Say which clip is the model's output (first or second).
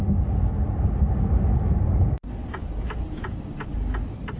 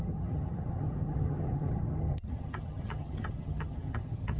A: second